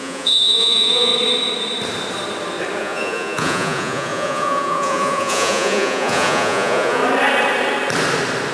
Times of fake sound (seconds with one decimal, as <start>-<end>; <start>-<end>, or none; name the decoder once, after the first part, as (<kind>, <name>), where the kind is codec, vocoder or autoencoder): 0.0-1.1 (vocoder, Vocos); 2.8-7.0